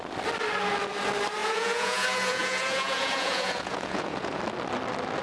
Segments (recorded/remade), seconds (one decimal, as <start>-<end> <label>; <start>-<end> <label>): 0.0-1.4 recorded; 1.4-4.4 remade; 4.4-5.2 recorded